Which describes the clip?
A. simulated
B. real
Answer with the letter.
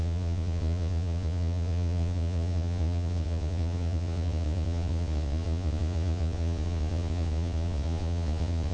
A